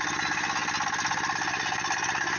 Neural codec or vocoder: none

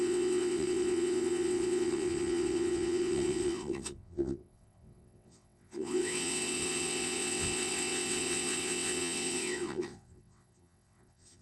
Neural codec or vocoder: vocoder, WaveNeXt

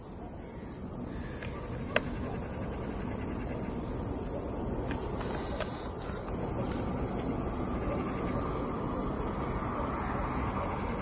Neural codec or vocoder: none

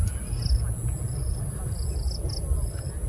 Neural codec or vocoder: none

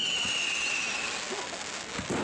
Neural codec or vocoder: none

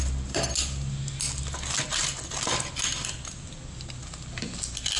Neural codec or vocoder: none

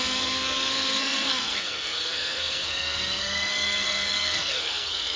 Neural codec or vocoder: codec, SNAC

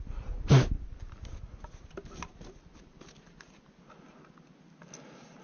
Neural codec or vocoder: none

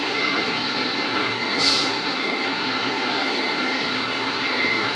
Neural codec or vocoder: codec, SNAC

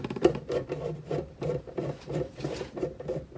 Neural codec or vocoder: vocoder, BigVGAN v2